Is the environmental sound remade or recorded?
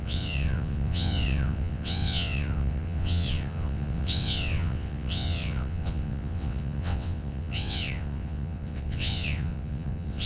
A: remade